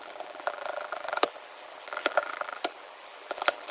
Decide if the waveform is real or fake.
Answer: fake